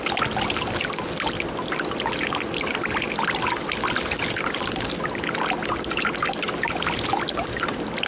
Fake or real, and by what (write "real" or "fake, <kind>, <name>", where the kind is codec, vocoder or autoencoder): real